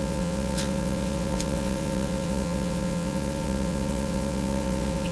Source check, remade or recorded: remade